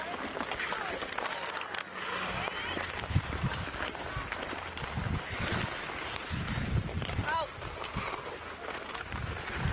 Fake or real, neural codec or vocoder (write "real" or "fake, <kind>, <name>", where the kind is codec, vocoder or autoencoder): real